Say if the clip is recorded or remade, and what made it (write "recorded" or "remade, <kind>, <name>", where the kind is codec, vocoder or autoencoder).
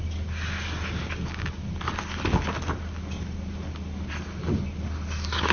recorded